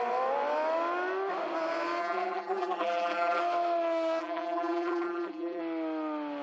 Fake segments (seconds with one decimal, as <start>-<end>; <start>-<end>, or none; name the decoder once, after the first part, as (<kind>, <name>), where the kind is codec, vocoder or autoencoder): 2.0-3.4 (vocoder, BigVGAN v2); 4.2-5.6